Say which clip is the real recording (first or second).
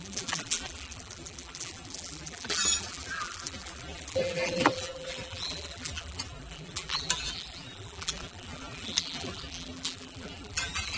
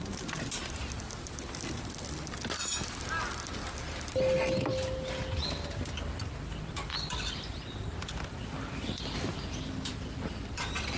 second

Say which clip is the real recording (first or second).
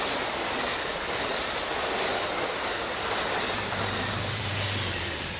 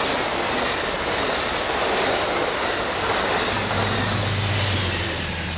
second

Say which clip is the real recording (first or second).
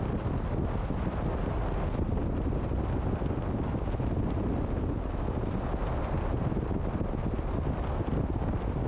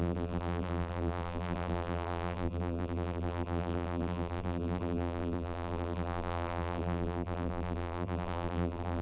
first